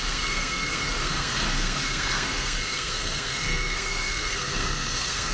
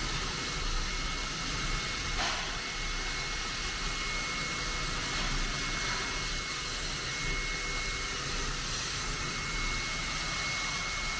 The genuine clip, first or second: second